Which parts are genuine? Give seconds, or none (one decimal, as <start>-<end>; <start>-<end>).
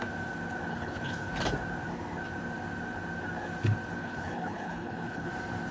0.0-0.7; 1.3-4.0; 5.3-5.7